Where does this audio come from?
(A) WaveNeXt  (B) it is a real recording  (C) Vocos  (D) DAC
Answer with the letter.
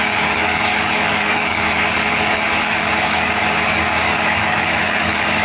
D